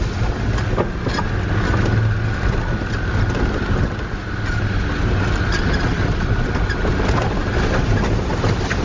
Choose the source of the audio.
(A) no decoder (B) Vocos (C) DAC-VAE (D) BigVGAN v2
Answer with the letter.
A